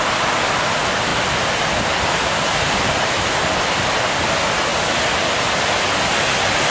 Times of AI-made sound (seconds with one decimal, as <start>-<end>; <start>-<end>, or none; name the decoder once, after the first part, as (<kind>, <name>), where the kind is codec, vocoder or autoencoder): none